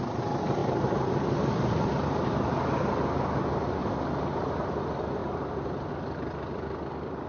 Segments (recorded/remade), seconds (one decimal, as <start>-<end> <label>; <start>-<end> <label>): 0.0-0.6 recorded; 0.6-2.3 remade; 2.3-5.2 recorded; 5.2-5.9 remade; 5.9-7.3 recorded